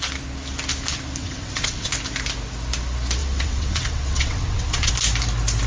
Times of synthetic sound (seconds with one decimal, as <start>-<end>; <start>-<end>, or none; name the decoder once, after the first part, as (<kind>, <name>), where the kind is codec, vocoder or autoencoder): 1.2-1.9 (vocoder, WaveNeXt); 3.2-4.9